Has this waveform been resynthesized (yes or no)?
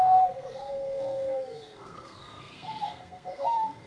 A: yes